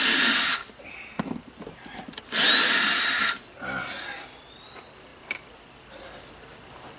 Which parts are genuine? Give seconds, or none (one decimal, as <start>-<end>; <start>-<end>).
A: 0.0-7.0